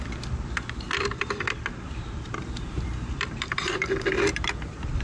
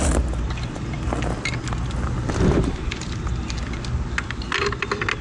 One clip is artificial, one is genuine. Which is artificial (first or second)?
first